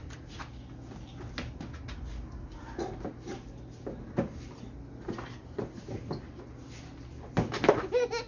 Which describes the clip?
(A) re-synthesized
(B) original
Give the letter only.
B